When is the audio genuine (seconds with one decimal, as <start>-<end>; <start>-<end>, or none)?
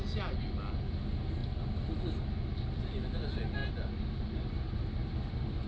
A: 0.0-5.7